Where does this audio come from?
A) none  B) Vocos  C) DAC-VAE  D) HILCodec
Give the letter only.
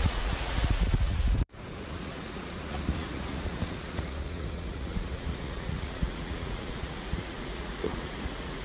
B